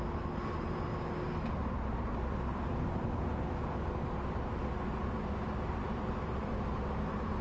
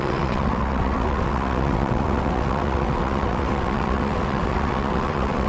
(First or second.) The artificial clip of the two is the second